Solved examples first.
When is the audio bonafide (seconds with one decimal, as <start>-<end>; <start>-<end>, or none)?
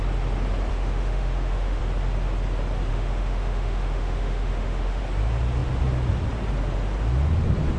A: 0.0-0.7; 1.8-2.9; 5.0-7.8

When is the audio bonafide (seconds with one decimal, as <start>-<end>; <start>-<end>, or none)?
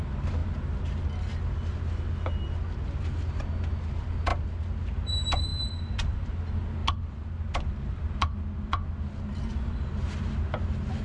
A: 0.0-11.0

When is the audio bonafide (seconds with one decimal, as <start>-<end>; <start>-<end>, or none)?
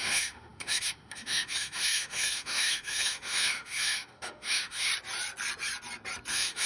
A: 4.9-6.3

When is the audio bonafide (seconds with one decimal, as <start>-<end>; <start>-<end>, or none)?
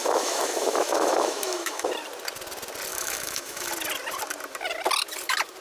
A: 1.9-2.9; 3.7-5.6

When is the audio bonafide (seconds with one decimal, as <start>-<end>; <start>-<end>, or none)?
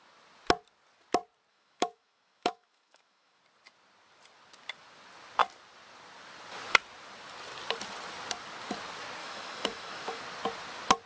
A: 0.0-1.5; 3.4-9.2; 10.2-11.1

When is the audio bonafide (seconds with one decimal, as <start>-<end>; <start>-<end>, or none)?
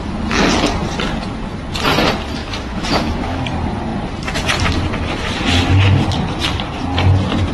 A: 0.0-2.4; 3.4-7.5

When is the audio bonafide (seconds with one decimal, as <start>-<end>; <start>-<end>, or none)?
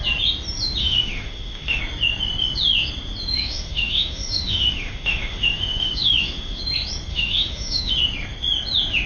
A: 0.0-0.8; 1.8-3.3; 6.6-7.1; 7.9-9.1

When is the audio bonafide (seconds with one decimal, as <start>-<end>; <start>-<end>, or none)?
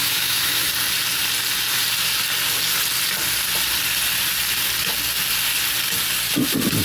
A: 0.7-6.8